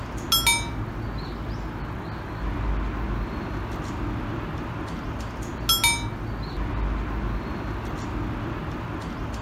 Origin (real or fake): real